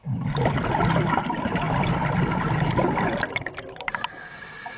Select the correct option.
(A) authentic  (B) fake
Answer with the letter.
A